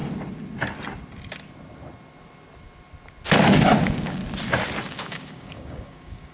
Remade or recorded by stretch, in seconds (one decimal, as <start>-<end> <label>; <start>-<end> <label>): 0.0-3.8 recorded; 3.8-4.2 remade; 4.2-4.8 recorded; 4.8-6.3 remade